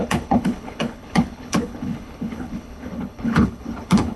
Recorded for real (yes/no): no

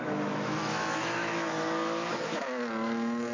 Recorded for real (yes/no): no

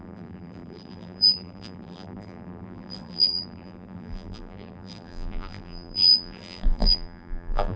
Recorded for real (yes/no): no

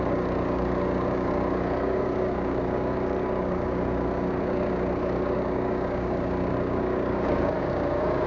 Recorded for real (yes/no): no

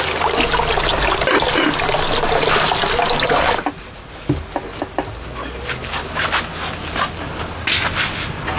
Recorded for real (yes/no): yes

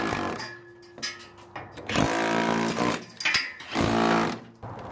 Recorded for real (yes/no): yes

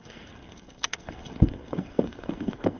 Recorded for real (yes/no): no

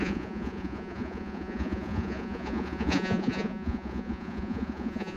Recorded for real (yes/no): no